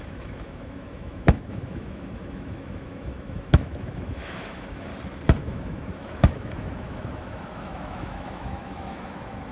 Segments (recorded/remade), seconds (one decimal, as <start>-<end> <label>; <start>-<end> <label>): 0.0-4.9 remade; 4.9-5.4 recorded; 5.4-9.5 remade